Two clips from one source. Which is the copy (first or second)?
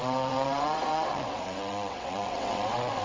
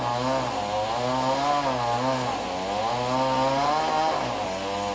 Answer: first